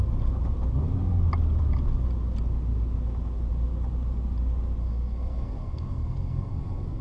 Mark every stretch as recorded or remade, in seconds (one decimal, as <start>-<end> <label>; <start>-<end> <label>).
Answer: 0.0-4.8 recorded; 4.8-7.0 remade